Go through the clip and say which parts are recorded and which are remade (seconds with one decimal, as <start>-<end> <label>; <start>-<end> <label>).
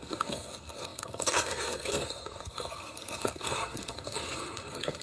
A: 0.0-5.0 remade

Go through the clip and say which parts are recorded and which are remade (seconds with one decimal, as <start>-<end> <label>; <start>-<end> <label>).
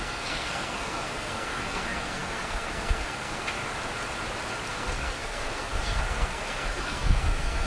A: 0.0-3.6 remade; 3.6-4.7 recorded; 4.7-7.7 remade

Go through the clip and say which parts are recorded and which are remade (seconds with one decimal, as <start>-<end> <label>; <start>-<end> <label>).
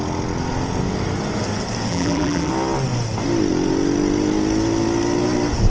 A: 0.0-1.9 recorded; 1.9-2.5 remade; 2.5-5.7 recorded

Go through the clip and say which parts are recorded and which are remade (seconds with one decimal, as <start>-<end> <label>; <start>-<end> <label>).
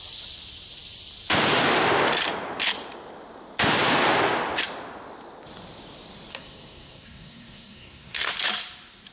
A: 0.0-6.3 recorded; 6.3-8.3 remade; 8.3-9.1 recorded